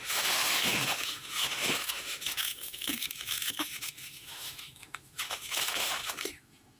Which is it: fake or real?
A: fake